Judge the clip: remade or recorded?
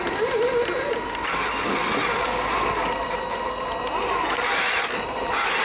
recorded